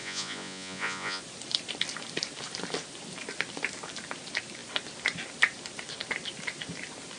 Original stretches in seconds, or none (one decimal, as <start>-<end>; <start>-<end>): 1.2-7.2